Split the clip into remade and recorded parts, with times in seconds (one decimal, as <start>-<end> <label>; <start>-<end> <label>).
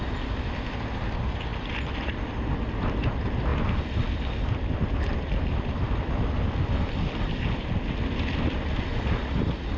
0.0-9.8 recorded